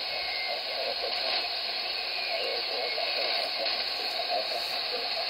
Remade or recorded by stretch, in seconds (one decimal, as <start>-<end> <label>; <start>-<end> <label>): 0.0-5.3 recorded